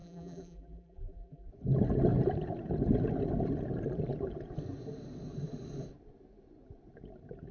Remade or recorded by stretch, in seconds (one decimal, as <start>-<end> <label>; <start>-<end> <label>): 0.0-1.5 remade; 1.5-7.5 recorded